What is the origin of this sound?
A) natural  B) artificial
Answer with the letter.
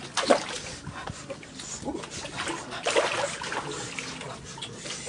A